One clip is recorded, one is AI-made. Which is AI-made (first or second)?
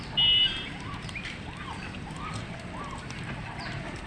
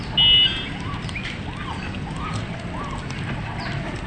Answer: first